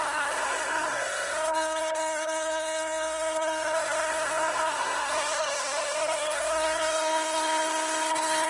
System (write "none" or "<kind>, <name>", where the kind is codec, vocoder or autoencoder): codec, SNAC